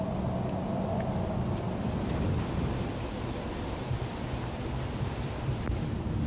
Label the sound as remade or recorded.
recorded